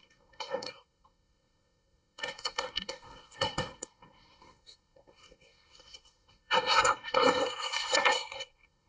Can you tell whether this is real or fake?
fake